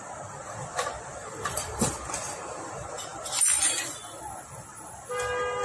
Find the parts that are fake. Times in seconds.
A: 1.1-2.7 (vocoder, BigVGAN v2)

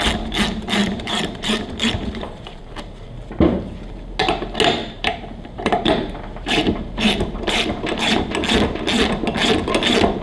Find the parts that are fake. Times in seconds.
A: 0.8-3.6 (vocoder, BigVGAN v2); 4.8-8.3

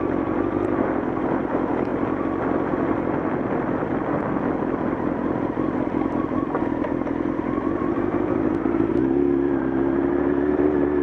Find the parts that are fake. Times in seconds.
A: 1.9-4.2 (vocoder, BigVGAN v2); 6.6-7.9; 8.9-10.1

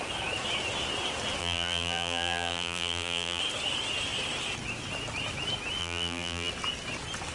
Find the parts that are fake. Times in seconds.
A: 1.4-3.4 (vocoder, BigVGAN v2); 5.8-6.5

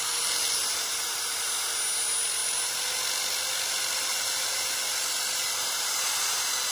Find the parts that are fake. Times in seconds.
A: none